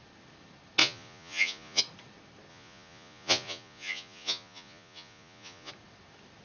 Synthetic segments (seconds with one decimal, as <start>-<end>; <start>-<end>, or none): 0.8-1.8; 2.5-5.7